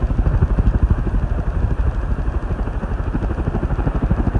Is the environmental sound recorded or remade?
recorded